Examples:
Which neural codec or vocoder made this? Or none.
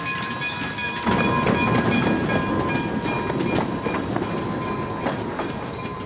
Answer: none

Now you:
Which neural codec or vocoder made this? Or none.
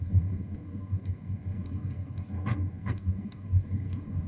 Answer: codec, SNAC